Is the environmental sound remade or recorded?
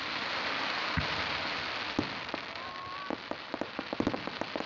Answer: recorded